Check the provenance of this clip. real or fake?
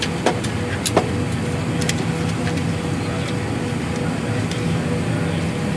real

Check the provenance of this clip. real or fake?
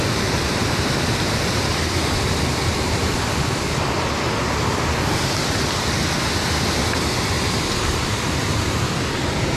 real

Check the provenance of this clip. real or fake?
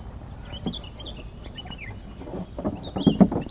real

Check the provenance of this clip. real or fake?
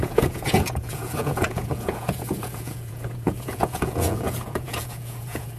fake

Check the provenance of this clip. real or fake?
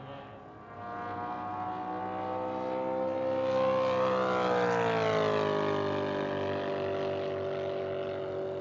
real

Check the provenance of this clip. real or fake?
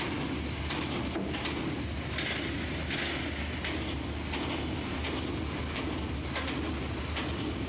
real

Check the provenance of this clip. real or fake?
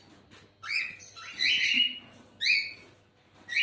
real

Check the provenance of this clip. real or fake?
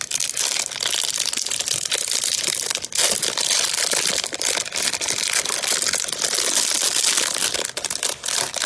real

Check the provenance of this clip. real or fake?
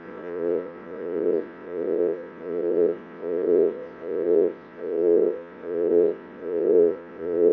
fake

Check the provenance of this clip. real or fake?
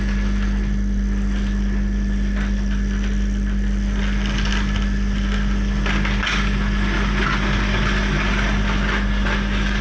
real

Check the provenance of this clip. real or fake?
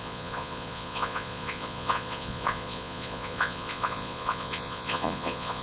fake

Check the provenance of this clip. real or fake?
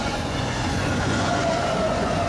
fake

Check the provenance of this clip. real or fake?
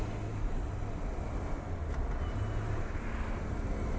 real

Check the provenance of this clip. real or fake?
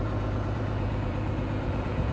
fake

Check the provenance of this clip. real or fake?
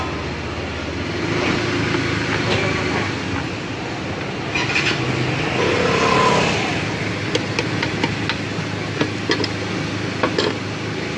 real